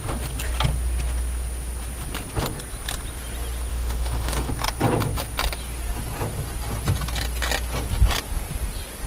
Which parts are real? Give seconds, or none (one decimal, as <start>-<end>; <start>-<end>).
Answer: 0.0-3.7; 4.5-9.1